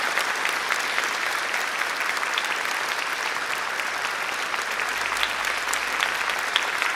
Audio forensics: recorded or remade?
remade